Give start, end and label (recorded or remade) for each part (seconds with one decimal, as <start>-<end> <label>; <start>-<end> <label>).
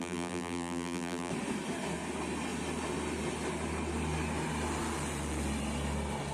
0.0-1.3 remade; 1.3-6.3 recorded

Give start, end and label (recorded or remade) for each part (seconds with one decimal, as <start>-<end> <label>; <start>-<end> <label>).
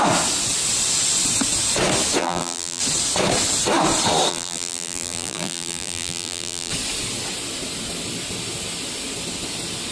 0.0-2.2 recorded; 2.2-2.8 remade; 2.8-4.3 recorded; 4.3-6.7 remade; 6.7-9.9 recorded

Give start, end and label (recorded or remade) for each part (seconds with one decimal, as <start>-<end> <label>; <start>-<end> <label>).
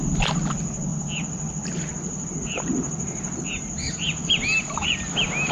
0.0-5.5 recorded